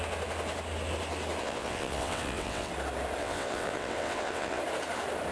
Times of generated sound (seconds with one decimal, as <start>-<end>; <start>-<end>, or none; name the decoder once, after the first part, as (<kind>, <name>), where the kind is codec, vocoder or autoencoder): 1.4-2.7 (vocoder, WaveNeXt); 3.2-4.6